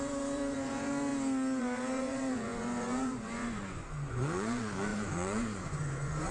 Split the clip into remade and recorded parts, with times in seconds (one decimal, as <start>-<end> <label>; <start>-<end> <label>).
0.0-1.1 remade; 1.1-1.6 recorded; 1.6-6.3 remade